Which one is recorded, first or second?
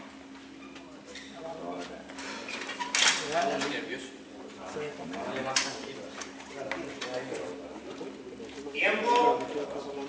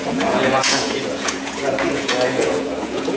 first